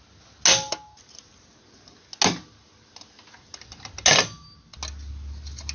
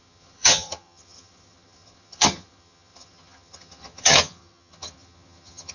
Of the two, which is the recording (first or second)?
first